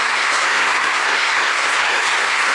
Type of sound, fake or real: fake